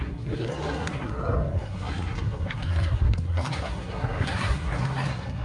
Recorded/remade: remade